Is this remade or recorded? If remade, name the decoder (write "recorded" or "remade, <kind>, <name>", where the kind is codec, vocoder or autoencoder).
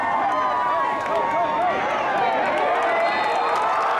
recorded